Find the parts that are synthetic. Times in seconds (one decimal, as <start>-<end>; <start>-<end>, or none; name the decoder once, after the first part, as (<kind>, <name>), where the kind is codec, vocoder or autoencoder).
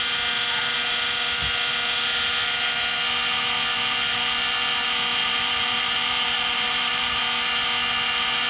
5.2-7.2 (vocoder, BigVGAN v2)